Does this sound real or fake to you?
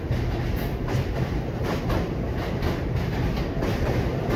real